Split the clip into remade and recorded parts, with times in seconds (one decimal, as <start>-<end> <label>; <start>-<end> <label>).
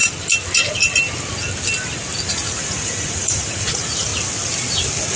0.0-2.3 recorded; 2.3-4.1 remade; 4.1-5.2 recorded